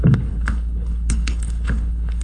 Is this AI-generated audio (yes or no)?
yes